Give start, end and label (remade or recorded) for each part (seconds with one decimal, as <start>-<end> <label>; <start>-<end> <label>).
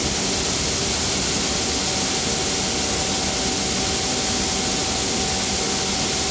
0.0-6.3 recorded